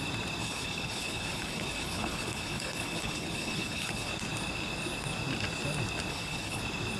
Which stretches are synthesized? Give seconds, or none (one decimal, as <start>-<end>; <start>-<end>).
0.4-4.1; 6.1-6.6